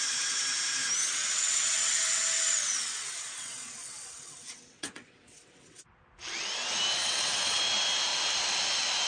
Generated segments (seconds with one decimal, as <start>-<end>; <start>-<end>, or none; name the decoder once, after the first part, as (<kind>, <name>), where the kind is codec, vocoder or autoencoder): 1.0-5.8 (vocoder, WaveNeXt); 7.0-7.6